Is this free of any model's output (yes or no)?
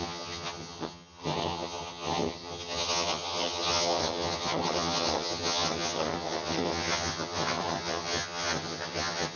no